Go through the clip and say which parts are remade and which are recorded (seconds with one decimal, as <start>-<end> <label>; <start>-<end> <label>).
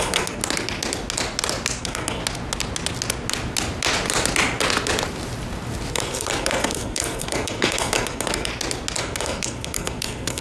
0.0-0.4 remade; 0.4-1.8 recorded; 1.8-2.2 remade; 2.2-5.9 recorded; 5.9-8.5 remade; 8.5-9.0 recorded; 9.0-10.4 remade